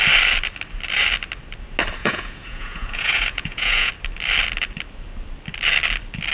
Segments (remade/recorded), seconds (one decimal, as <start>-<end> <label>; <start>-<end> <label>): 0.0-2.0 recorded; 2.0-3.9 remade; 3.9-6.3 recorded